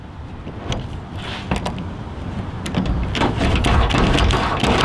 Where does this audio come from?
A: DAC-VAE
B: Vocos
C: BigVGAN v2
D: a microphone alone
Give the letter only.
D